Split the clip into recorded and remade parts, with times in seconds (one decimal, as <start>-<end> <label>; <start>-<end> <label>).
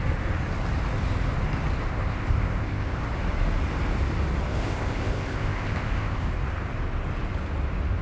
0.0-1.9 recorded; 1.9-3.0 remade; 3.0-4.5 recorded; 4.5-6.3 remade; 6.3-8.0 recorded